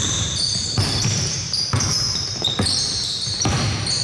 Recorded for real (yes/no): no